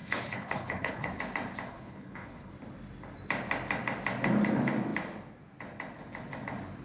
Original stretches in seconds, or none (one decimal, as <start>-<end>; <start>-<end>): 1.2-1.7; 2.5-6.8